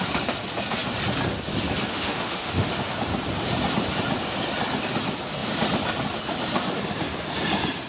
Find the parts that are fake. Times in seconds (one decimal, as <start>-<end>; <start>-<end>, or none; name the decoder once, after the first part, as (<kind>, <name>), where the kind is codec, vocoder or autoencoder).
1.9-2.7 (autoencoder, DAC-VAE)

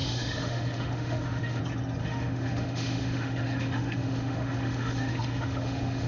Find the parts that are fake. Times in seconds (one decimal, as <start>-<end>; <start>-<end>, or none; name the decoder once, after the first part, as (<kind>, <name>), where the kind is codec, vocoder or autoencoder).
0.0-1.6 (autoencoder, DAC-VAE); 2.0-6.1